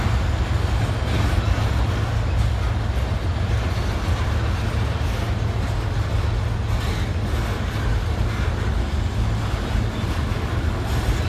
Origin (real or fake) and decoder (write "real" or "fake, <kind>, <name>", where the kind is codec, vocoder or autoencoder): real